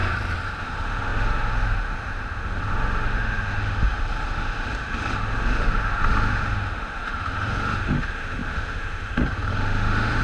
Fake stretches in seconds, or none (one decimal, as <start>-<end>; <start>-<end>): 0.6-10.2

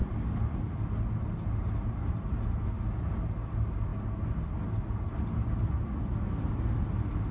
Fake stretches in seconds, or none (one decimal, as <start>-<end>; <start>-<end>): none

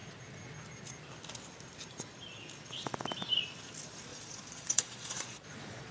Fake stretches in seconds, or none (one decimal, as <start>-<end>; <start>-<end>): 4.1-5.9